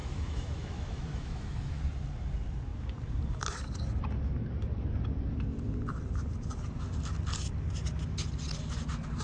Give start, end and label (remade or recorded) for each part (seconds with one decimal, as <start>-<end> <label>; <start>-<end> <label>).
0.0-1.8 remade; 1.8-9.2 recorded